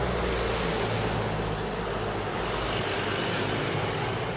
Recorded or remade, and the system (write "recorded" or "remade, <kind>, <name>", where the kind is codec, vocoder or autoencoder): recorded